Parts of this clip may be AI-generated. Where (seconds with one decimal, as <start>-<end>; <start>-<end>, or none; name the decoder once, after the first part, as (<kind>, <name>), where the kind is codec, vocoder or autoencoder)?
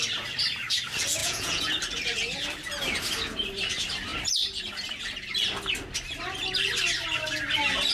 1.2-1.7 (vocoder, Vocos)